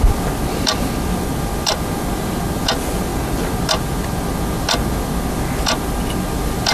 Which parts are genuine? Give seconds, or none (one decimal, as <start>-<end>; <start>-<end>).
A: 0.0-6.7